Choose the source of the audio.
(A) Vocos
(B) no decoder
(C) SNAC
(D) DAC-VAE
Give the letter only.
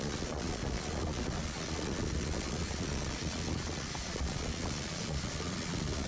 A